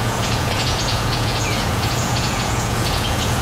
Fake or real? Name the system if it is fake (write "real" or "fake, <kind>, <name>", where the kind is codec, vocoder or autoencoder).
fake, vocoder, Vocos